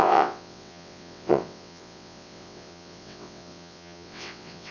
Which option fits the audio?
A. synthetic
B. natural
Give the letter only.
A